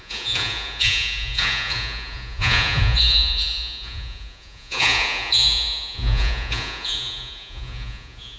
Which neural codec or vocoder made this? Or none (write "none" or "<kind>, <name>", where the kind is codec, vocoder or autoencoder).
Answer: vocoder, Vocos